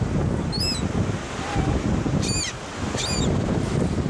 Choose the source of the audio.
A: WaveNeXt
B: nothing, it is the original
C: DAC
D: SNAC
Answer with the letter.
B